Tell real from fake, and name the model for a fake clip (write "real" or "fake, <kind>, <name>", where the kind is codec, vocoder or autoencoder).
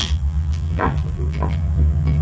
fake, vocoder, BigVGAN v2